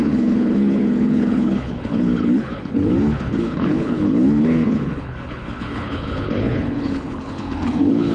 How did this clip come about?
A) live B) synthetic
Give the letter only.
B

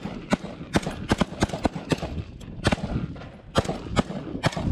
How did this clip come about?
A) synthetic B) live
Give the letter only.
B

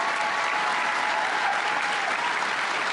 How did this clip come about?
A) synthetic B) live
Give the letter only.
B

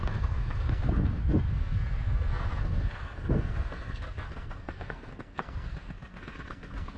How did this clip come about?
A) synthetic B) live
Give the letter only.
A